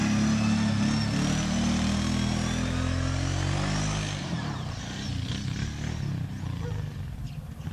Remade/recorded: recorded